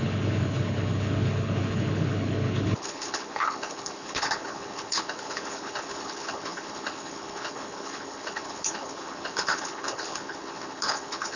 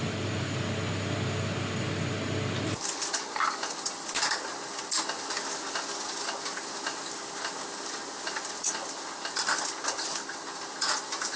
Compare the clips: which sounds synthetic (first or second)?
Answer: first